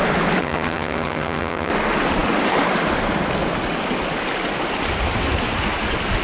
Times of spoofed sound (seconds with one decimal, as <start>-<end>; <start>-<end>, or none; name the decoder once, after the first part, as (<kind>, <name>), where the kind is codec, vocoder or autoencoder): 0.4-1.7 (vocoder, HiFi-GAN)

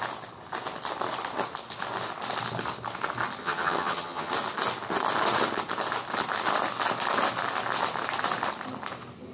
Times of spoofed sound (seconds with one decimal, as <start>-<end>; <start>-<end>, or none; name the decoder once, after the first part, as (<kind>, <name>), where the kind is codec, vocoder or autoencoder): 3.4-4.3 (vocoder, HiFi-GAN)

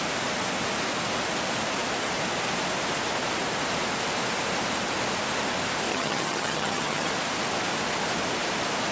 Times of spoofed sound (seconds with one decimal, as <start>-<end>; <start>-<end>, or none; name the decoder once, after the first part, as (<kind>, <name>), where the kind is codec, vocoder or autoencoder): 5.9-7.1 (vocoder, HiFi-GAN)

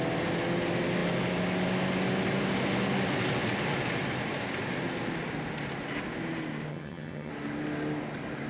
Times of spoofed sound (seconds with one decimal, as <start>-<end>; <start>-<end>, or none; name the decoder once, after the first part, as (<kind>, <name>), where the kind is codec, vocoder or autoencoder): 6.7-7.3 (vocoder, HiFi-GAN)

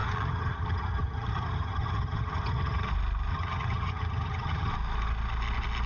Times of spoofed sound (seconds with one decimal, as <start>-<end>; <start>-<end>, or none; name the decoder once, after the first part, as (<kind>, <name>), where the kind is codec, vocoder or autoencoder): 0.0-2.9 (vocoder, HiFi-GAN); 3.3-4.7

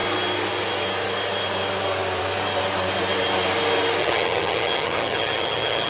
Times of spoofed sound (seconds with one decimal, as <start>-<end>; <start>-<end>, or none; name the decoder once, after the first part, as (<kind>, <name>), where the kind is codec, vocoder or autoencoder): 4.0-5.9 (vocoder, HiFi-GAN)